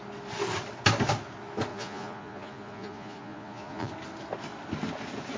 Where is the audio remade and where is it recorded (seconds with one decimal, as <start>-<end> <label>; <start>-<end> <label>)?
0.0-1.7 recorded; 1.7-3.9 remade; 3.9-5.4 recorded